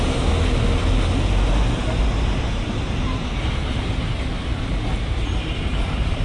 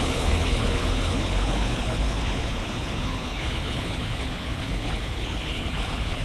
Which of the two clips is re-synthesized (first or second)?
second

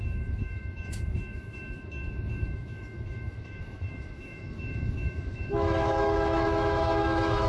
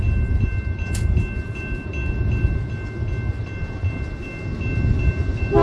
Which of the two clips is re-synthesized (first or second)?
first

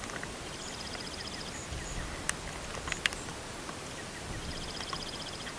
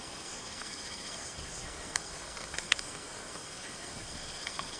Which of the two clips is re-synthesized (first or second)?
second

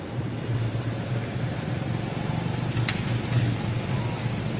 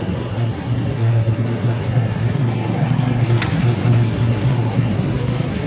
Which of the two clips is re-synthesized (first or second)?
second